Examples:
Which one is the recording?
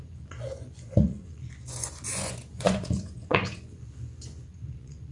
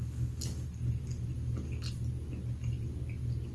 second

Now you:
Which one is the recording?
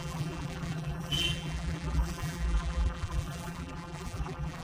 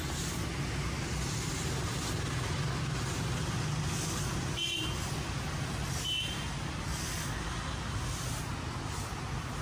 second